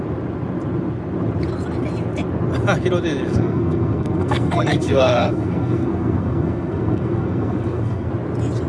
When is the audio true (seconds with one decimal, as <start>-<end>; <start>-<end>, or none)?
0.0-3.3; 8.1-8.7